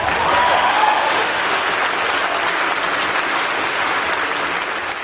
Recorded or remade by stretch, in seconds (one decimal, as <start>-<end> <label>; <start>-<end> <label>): 0.0-0.4 recorded; 0.4-1.6 remade; 1.6-3.3 recorded; 3.3-4.0 remade; 4.0-5.0 recorded